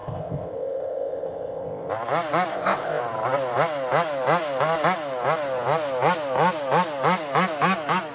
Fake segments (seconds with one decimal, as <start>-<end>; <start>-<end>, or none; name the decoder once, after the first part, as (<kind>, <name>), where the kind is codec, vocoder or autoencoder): 0.0-1.9 (codec, ZipCodec); 2.5-3.0